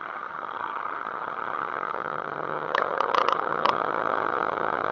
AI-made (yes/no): yes